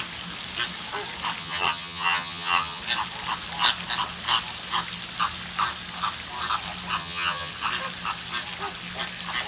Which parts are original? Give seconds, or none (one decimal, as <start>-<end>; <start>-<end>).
0.0-1.4; 2.8-7.0; 7.5-9.5